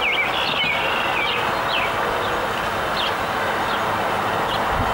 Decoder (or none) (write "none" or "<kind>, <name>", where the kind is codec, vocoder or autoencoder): none